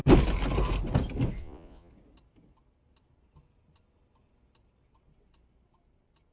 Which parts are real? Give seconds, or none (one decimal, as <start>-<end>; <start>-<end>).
0.0-1.4; 1.9-6.3